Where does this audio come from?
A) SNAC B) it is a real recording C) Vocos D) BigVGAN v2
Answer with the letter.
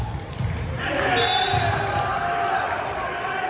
B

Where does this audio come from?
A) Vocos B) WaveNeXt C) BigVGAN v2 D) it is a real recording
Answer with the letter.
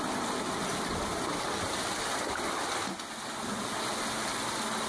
D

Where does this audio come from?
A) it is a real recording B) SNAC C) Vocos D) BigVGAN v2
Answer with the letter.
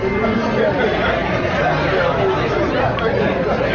A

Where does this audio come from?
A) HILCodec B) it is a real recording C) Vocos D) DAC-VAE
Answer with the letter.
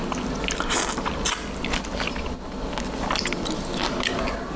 B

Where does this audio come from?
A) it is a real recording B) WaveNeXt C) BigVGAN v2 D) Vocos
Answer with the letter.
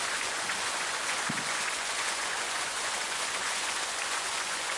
D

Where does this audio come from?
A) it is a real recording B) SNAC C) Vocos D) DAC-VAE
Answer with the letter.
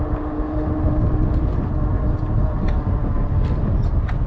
A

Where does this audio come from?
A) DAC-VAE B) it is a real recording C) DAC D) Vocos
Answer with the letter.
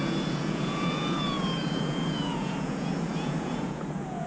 D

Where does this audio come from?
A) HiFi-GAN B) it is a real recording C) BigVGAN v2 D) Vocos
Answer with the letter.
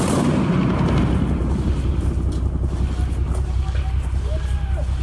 B